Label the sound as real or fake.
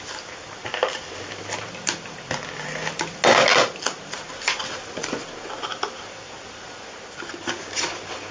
real